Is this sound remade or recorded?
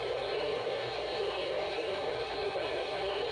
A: remade